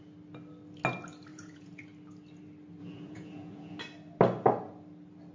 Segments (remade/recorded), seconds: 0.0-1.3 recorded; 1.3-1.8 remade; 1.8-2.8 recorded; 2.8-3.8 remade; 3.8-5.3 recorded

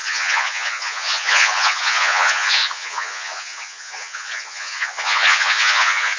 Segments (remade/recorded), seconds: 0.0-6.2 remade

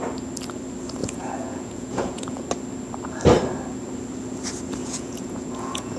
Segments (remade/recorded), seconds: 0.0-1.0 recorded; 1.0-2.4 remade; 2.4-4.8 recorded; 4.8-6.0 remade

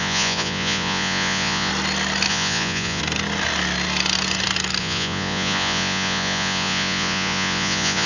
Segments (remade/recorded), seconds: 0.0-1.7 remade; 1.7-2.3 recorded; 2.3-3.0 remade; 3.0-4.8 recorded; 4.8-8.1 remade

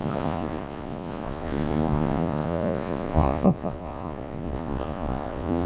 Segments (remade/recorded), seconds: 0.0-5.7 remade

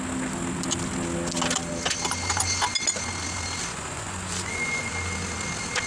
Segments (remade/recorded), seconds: 0.0-3.7 recorded; 3.7-4.9 remade; 4.9-5.9 recorded